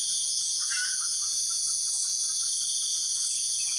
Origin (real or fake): fake